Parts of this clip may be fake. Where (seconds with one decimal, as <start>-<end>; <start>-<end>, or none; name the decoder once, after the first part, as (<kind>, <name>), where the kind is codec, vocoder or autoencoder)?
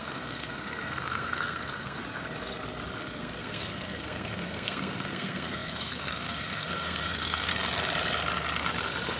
0.0-2.0 (codec, SNAC); 3.2-7.5